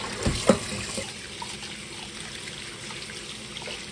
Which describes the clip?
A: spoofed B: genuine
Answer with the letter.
B